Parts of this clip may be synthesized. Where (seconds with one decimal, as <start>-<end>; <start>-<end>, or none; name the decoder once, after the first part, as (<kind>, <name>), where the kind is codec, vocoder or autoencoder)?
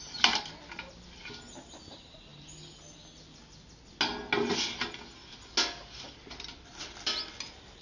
none